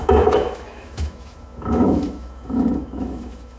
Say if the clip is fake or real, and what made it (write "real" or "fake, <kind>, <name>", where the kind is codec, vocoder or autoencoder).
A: fake, autoencoder, DAC-VAE